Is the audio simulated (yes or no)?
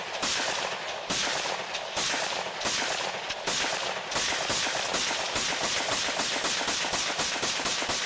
no